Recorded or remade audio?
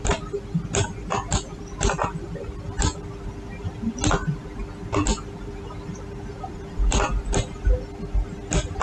recorded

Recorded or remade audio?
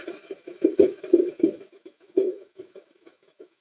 remade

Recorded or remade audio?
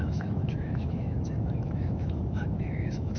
remade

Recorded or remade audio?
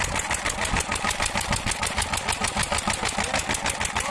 recorded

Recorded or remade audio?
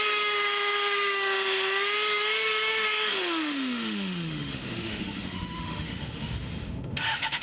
remade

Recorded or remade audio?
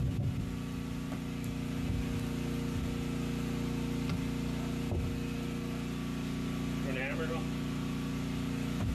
recorded